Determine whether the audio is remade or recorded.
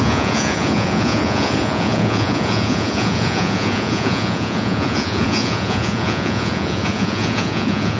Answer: remade